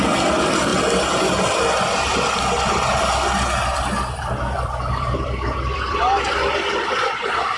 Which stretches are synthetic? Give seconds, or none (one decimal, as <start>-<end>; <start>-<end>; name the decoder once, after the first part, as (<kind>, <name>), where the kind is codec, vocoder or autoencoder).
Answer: 0.0-0.7 (vocoder, BigVGAN v2); 3.6-7.6